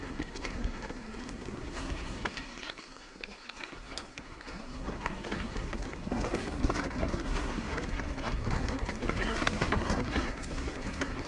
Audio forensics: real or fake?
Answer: fake